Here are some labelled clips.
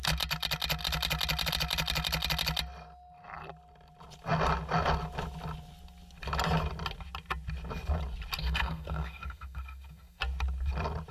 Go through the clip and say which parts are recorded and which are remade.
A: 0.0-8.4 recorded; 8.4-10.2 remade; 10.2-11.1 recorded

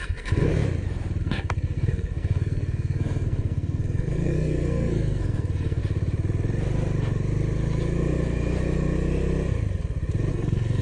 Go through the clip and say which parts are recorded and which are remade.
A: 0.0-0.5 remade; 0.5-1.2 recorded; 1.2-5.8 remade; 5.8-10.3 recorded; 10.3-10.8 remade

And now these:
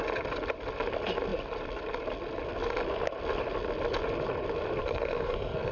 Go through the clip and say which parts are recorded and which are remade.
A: 0.0-4.8 recorded; 4.8-5.7 remade

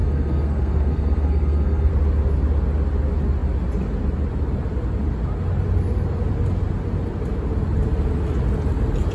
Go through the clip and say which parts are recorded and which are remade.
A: 0.0-1.9 remade; 1.9-9.1 recorded

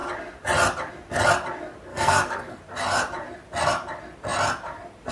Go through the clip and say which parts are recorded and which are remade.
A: 0.0-1.9 recorded; 1.9-2.6 remade; 2.6-5.1 recorded

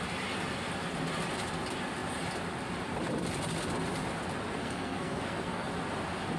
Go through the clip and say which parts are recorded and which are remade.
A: 0.0-4.6 recorded; 4.6-5.7 remade; 5.7-6.4 recorded

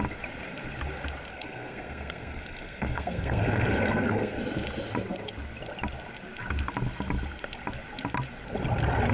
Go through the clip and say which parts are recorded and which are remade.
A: 0.0-1.3 recorded; 1.3-4.4 remade; 4.4-9.1 recorded

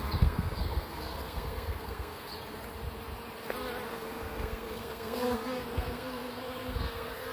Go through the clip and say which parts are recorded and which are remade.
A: 0.0-2.3 remade; 2.3-3.9 recorded; 3.9-7.3 remade